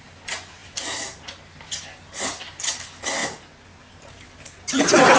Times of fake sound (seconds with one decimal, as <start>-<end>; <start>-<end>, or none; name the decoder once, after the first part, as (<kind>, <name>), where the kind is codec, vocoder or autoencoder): none